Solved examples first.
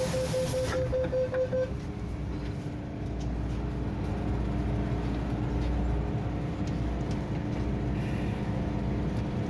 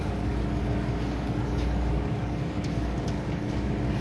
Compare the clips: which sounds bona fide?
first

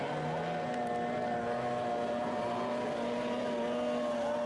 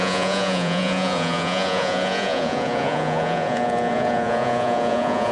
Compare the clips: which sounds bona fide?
first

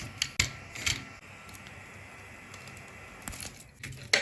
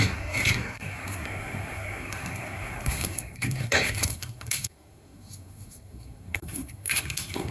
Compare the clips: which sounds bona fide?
first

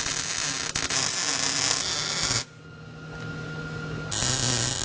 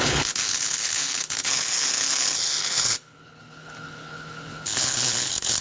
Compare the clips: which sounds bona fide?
first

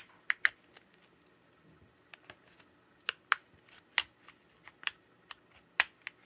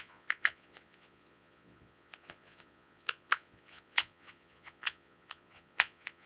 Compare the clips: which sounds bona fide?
first